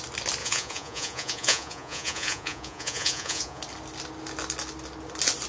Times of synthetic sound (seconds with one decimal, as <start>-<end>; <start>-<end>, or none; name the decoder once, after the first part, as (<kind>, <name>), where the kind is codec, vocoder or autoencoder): 0.4-3.6 (vocoder, Vocos)